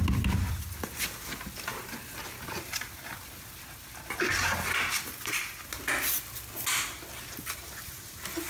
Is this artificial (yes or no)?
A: no